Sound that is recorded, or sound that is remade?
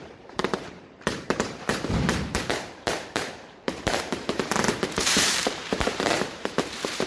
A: remade